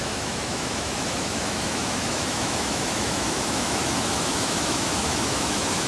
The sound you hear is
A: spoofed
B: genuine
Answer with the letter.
A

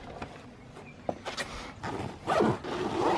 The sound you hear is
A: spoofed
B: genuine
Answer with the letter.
B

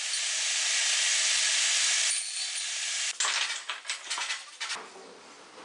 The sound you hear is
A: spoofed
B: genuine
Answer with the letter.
B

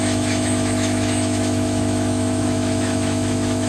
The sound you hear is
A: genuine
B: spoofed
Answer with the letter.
B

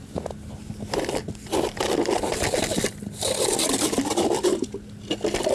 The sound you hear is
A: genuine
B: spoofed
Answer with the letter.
A